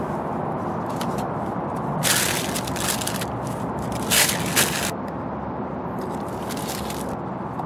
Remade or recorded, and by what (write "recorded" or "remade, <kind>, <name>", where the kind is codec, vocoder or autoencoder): recorded